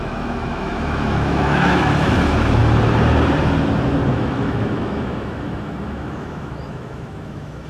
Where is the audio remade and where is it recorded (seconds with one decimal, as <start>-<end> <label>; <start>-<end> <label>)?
0.0-2.6 remade; 2.6-4.1 recorded; 4.1-7.7 remade

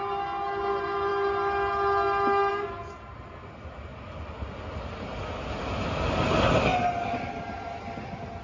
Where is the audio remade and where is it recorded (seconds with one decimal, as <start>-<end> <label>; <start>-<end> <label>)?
0.0-8.4 recorded

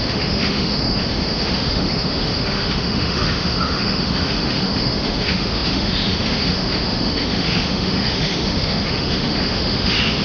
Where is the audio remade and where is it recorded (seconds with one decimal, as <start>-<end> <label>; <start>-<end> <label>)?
0.0-10.2 remade

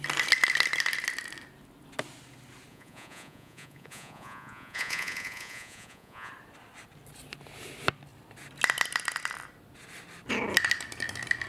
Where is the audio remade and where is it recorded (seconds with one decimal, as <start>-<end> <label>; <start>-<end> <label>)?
0.0-2.7 recorded; 2.7-6.3 remade; 6.3-11.5 recorded

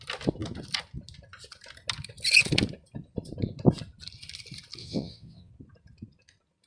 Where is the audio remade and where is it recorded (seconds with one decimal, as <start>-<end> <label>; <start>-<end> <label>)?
0.0-4.8 recorded; 4.8-5.5 remade; 5.5-6.7 recorded